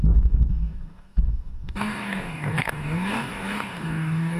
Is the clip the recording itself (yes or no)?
no